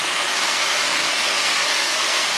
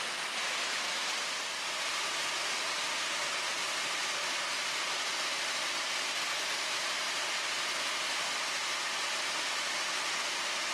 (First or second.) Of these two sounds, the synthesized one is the first